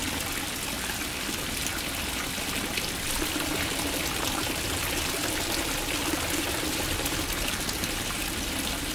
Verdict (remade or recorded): recorded